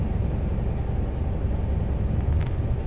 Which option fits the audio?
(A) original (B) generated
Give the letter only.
A